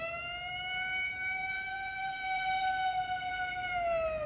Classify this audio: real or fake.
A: fake